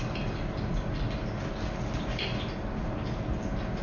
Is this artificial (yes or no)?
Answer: no